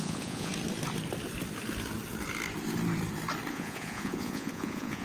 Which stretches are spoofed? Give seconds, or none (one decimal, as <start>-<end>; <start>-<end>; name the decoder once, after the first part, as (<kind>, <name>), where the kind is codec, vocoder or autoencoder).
0.0-0.5 (vocoder, Vocos); 3.5-5.0